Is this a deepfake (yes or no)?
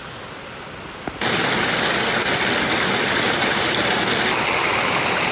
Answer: no